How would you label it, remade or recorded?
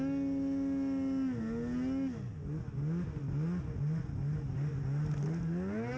recorded